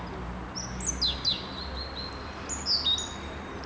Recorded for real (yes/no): yes